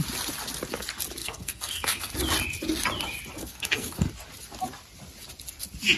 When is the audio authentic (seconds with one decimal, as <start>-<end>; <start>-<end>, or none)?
0.0-1.2; 2.1-3.4; 4.1-6.0